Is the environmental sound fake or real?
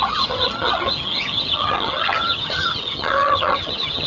fake